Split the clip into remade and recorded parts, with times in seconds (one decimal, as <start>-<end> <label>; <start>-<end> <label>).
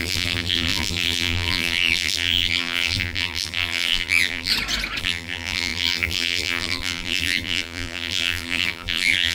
0.0-4.5 remade; 4.5-5.0 recorded; 5.0-9.3 remade